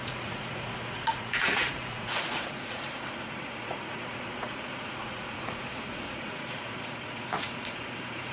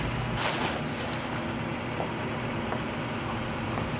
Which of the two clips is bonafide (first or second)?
second